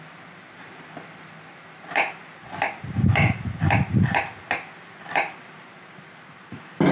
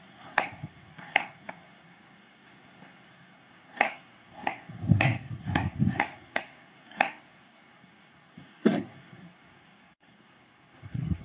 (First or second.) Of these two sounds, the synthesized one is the second